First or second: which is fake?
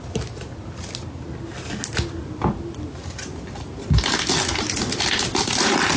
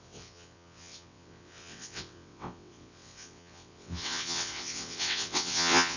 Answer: second